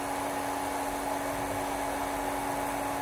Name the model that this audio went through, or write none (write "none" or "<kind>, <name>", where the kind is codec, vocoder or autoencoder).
none